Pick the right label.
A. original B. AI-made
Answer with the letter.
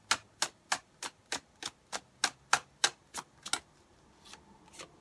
A